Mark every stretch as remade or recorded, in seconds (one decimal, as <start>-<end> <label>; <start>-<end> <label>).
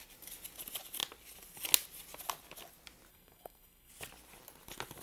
0.0-3.1 recorded; 3.1-3.9 remade; 3.9-5.0 recorded